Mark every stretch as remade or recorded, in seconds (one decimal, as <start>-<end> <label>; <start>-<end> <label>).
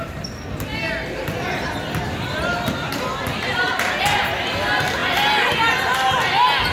0.0-6.7 recorded